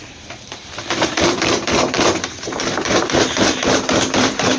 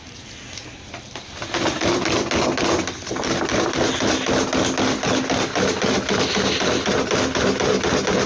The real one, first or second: second